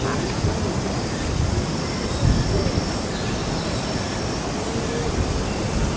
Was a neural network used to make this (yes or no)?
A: no